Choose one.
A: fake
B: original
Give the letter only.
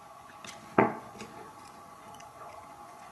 A